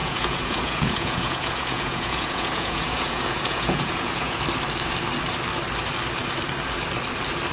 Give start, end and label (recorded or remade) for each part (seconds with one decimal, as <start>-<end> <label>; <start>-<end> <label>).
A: 0.0-4.4 remade; 4.4-7.5 recorded